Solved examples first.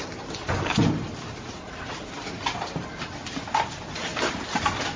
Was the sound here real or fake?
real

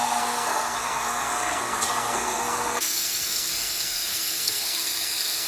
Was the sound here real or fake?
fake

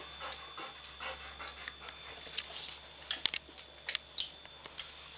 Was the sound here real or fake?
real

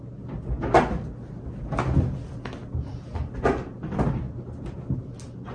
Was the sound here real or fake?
real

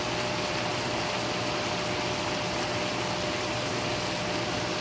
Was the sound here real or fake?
real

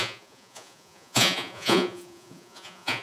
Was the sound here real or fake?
fake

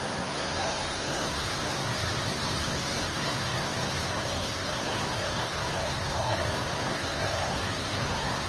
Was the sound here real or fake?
fake